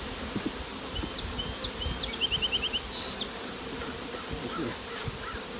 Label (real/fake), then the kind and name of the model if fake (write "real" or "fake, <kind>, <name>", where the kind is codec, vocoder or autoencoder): real